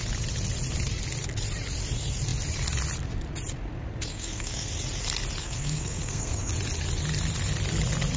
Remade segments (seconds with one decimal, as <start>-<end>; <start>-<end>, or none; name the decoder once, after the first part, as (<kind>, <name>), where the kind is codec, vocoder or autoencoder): 4.1-4.7 (codec, SNAC); 5.4-6.5